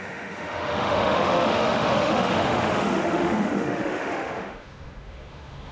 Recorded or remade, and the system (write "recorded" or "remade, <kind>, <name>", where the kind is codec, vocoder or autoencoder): remade, autoencoder, DAC-VAE